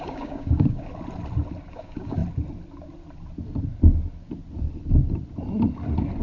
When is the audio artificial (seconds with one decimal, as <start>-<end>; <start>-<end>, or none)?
0.0-0.9; 1.7-2.2